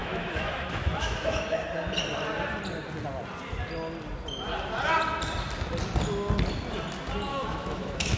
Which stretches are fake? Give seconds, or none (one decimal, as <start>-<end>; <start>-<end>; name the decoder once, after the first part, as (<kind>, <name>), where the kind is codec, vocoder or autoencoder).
0.0-1.6 (autoencoder, DAC-VAE); 7.3-8.2